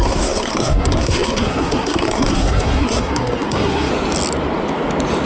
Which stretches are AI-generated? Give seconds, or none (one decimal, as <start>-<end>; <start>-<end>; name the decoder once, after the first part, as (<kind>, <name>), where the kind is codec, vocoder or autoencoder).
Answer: 0.0-3.9 (codec, SNAC)